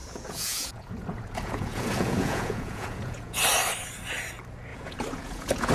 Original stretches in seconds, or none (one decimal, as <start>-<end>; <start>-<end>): 3.4-4.7